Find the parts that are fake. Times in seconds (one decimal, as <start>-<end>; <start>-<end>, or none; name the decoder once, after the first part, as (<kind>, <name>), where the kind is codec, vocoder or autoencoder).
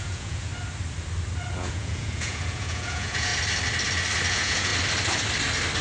0.0-0.5 (vocoder, Vocos); 1.5-3.3; 4.3-4.7